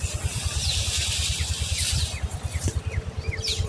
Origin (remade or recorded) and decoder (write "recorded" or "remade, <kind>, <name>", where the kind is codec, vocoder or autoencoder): recorded